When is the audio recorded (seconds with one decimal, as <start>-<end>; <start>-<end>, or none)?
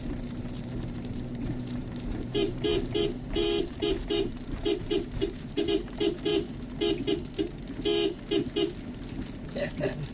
6.3-10.1